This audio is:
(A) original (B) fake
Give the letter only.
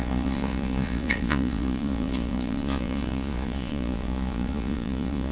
B